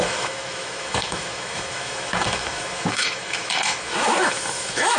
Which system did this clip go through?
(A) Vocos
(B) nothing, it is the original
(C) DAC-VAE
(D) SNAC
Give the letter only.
C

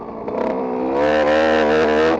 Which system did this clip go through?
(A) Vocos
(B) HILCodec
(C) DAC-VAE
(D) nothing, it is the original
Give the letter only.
D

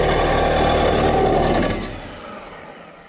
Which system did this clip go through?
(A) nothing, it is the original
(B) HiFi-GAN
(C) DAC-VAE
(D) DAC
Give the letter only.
A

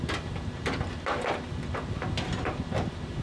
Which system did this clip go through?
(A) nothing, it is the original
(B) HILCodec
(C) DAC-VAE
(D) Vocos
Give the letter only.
A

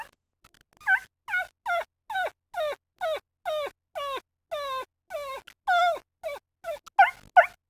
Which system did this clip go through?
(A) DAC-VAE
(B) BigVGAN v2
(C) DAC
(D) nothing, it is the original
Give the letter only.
D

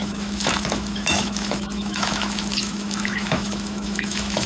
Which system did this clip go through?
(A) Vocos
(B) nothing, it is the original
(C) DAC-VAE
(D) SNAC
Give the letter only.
C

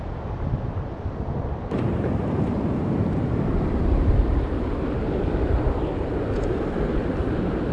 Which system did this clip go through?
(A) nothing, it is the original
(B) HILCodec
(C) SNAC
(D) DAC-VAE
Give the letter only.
A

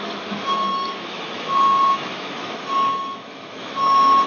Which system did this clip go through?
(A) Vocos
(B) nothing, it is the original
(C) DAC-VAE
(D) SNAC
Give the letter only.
C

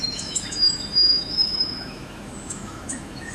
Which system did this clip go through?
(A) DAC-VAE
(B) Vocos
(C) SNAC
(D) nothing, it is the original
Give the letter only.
A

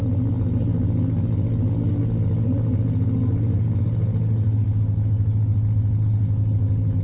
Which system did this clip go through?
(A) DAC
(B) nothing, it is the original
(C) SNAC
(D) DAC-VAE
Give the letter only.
B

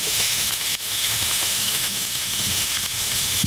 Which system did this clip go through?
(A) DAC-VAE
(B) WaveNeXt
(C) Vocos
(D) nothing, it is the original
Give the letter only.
A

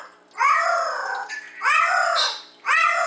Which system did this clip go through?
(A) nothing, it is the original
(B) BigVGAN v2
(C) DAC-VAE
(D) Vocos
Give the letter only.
A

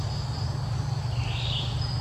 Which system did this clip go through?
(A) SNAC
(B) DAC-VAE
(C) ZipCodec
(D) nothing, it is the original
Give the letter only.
D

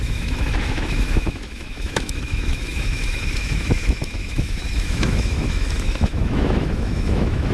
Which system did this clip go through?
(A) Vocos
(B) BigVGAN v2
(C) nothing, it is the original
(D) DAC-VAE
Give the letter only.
D